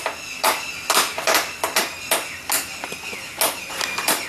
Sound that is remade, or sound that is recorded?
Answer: recorded